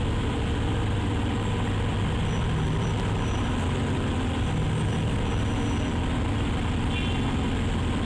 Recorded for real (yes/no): yes